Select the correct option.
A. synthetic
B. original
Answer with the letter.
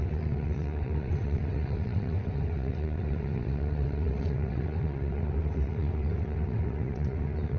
A